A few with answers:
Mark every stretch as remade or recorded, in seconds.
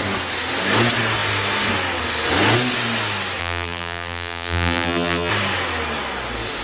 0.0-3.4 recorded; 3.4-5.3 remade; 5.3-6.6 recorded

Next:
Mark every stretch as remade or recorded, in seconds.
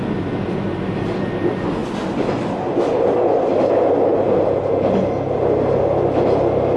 0.0-6.8 recorded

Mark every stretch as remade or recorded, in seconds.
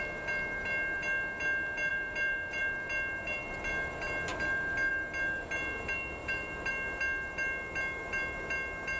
0.0-1.9 recorded; 1.9-2.6 remade; 2.6-6.2 recorded; 6.2-6.7 remade; 6.7-9.0 recorded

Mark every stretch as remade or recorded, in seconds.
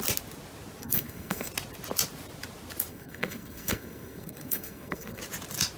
0.0-0.8 recorded; 0.8-1.5 remade; 1.5-2.9 recorded; 2.9-5.2 remade; 5.2-5.8 recorded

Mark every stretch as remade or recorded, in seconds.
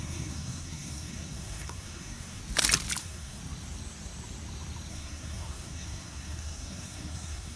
0.0-2.4 remade; 2.4-3.0 recorded; 3.0-3.4 remade; 3.4-4.9 recorded; 4.9-7.6 remade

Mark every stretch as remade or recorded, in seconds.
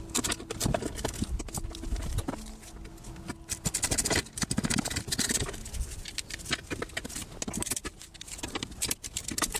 0.0-9.6 recorded